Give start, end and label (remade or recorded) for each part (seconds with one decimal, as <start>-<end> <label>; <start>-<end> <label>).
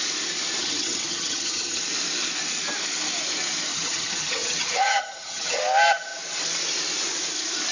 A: 0.0-0.6 recorded; 0.6-1.8 remade; 1.8-3.7 recorded; 3.7-5.6 remade; 5.6-7.7 recorded